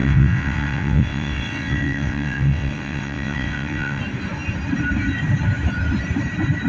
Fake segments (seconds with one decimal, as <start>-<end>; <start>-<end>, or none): 0.0-4.0